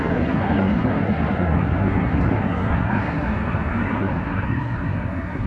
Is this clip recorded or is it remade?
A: remade